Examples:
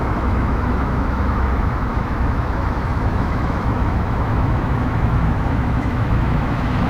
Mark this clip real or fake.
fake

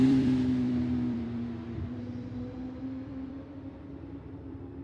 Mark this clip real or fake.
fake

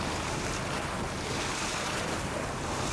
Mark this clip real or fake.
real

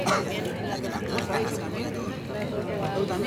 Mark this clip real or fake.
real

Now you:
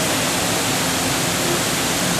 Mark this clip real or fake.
real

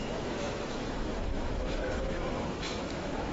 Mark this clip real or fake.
fake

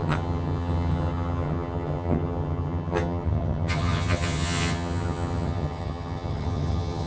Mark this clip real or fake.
fake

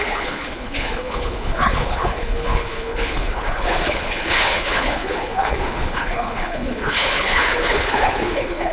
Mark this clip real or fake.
fake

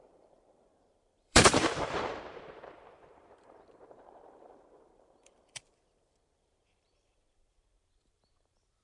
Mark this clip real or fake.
fake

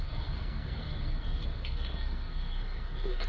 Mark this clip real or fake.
fake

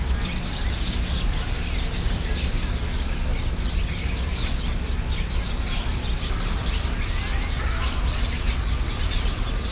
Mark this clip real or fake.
real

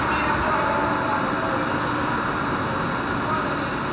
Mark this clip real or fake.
real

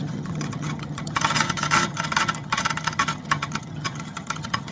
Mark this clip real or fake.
fake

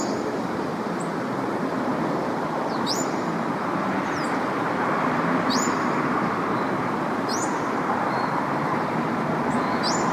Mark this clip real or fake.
fake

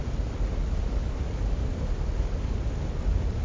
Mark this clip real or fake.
real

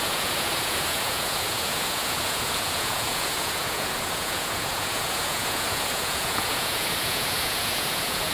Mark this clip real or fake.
fake